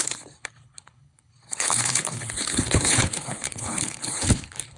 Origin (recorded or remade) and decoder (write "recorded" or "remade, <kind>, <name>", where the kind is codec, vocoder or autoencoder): remade, codec, HILCodec